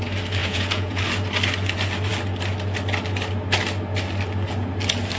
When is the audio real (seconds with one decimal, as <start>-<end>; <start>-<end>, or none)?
0.0-0.4; 1.0-5.2